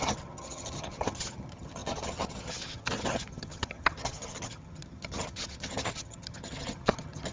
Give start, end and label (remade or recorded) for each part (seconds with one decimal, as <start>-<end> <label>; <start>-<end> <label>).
0.0-7.3 remade